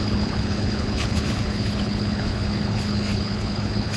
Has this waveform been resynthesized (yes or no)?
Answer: yes